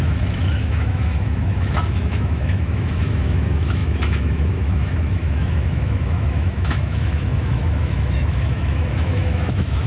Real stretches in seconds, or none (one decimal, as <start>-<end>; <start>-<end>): none